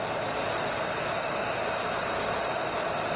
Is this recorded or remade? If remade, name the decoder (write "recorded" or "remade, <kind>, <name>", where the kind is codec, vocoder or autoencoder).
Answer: recorded